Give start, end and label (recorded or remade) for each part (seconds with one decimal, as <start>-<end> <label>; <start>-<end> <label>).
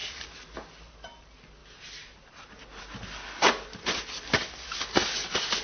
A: 0.0-5.6 recorded